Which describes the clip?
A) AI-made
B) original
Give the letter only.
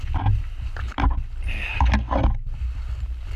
B